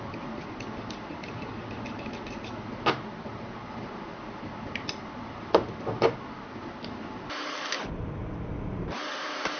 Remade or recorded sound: recorded